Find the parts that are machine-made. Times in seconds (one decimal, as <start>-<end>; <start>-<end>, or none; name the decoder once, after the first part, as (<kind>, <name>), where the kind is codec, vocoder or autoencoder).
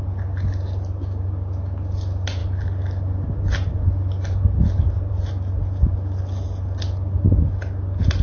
none